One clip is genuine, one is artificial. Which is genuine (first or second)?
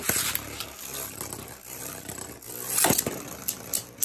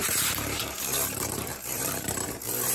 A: first